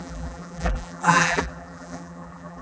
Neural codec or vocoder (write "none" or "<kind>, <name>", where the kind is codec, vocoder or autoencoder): vocoder, BigVGAN v2